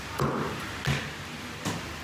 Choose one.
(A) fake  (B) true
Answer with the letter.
B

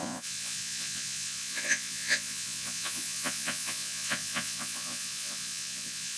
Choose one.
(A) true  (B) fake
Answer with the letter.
B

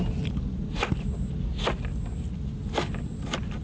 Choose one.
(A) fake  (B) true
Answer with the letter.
B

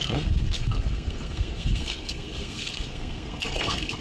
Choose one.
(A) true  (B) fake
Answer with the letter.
B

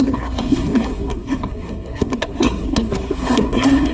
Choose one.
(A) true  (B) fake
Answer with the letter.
B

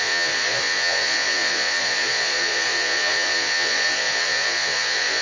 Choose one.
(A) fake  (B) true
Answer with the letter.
A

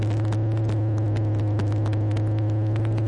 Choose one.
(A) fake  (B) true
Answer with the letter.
B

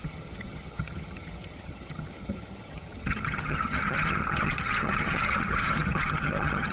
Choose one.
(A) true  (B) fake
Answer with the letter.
B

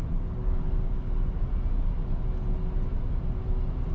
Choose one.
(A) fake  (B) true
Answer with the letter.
B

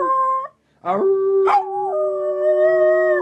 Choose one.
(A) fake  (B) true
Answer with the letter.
B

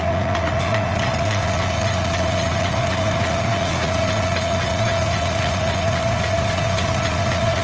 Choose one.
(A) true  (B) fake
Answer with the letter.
B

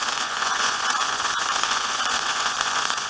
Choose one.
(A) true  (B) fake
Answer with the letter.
B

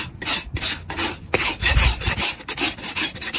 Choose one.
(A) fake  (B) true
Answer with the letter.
B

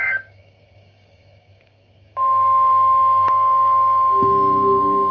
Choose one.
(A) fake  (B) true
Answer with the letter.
A